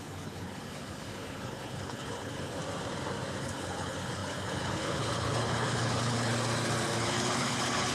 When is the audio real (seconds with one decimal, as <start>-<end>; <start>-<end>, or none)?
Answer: 2.6-3.4; 6.3-7.0